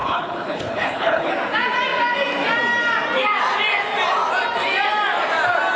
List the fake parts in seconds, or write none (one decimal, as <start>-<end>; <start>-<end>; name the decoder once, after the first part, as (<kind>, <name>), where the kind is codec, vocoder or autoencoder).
0.0-1.3 (codec, HILCodec)